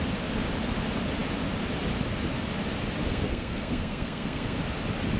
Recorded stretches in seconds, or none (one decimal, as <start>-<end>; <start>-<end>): 0.0-3.1; 4.6-5.2